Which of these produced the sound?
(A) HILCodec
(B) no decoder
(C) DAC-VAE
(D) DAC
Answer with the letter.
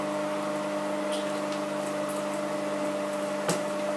B